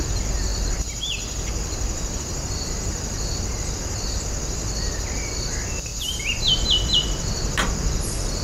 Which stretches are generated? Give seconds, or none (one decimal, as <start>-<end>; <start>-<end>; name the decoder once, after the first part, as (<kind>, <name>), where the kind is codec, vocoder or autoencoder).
0.5-2.2 (vocoder, BigVGAN v2)